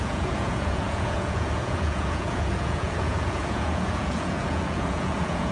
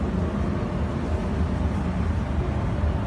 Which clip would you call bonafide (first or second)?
second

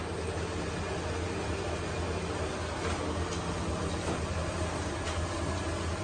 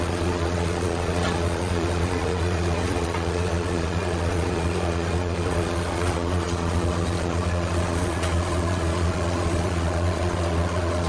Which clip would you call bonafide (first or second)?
first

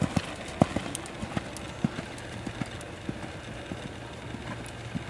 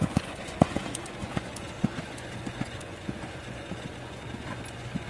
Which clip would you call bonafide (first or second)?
first